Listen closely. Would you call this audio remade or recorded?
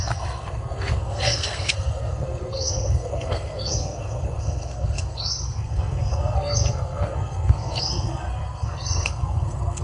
remade